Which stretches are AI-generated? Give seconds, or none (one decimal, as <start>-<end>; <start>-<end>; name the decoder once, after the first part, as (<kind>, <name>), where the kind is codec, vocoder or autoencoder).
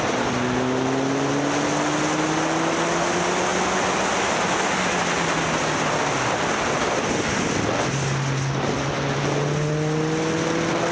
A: none